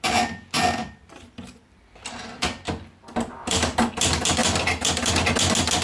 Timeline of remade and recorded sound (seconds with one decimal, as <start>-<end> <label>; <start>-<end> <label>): 0.0-0.8 recorded; 0.8-3.9 remade; 3.9-4.4 recorded; 4.4-5.1 remade; 5.1-5.8 recorded